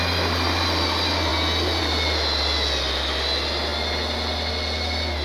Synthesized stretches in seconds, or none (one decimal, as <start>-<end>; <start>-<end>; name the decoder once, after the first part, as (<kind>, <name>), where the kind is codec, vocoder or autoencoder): none